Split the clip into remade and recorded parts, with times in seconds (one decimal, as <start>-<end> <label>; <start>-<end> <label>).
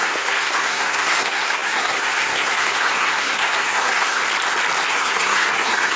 0.0-4.2 remade; 4.2-4.9 recorded; 4.9-6.0 remade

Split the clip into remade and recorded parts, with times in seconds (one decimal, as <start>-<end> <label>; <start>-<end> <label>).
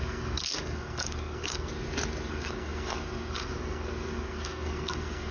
0.0-1.7 remade; 1.7-2.3 recorded; 2.3-5.3 remade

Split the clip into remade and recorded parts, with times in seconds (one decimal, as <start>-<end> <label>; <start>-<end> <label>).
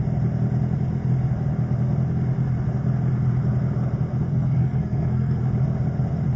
0.0-4.3 recorded; 4.3-5.4 remade; 5.4-6.4 recorded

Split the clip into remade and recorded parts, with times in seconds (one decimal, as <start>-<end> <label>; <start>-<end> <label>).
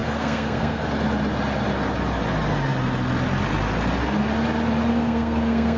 0.0-0.8 remade; 0.8-4.9 recorded; 4.9-5.8 remade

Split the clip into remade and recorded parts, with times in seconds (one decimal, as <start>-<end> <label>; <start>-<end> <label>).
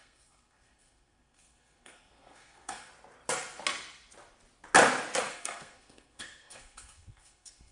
0.0-2.9 remade; 2.9-5.3 recorded; 5.3-7.7 remade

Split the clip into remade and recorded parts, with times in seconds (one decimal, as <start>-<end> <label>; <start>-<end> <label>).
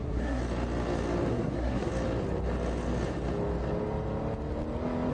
0.0-0.4 remade; 0.4-1.3 recorded; 1.3-1.9 remade; 1.9-5.1 recorded